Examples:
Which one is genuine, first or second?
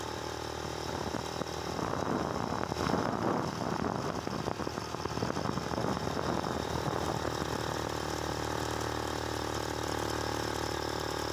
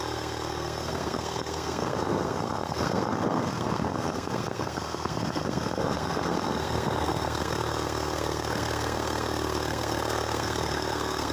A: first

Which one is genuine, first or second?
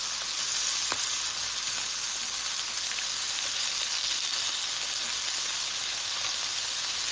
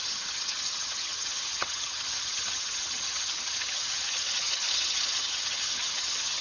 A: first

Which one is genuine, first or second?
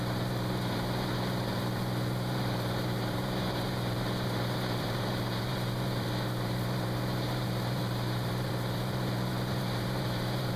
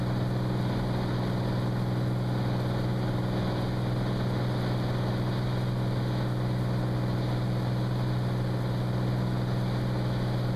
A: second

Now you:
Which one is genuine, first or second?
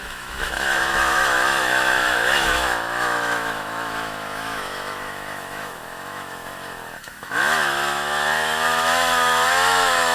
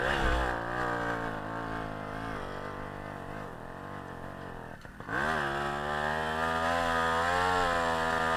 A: second